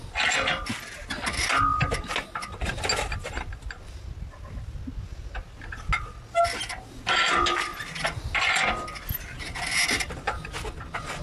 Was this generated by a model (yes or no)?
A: no